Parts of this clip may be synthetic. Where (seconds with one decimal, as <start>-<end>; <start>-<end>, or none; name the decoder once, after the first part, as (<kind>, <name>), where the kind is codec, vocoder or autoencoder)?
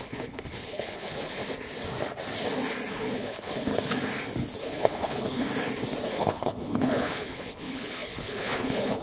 0.0-1.4 (codec, HILCodec); 2.9-3.7; 4.6-5.5; 6.1-9.0